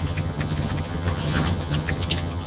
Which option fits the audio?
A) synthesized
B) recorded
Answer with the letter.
A